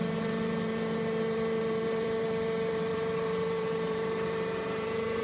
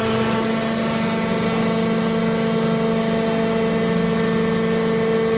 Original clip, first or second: second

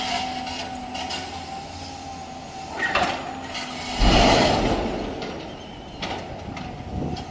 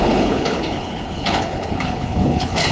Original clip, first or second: first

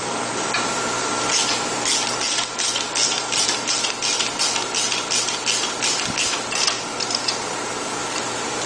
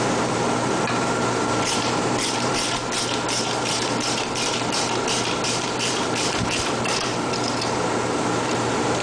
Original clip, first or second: first